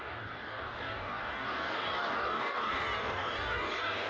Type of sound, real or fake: fake